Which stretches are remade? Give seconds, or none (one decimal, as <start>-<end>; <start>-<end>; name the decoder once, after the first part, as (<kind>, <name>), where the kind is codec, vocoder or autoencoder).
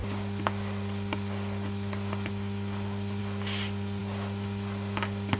none